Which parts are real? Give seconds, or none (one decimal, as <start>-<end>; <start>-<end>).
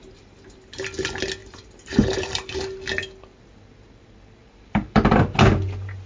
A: 0.0-1.4; 2.6-4.4; 5.2-6.1